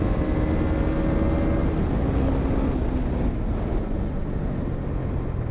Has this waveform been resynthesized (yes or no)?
no